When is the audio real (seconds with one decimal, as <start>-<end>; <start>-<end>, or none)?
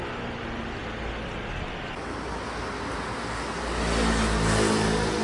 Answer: 0.0-5.2